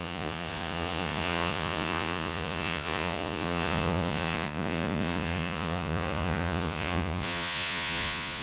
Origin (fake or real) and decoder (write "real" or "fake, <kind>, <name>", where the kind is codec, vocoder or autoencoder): fake, vocoder, Vocos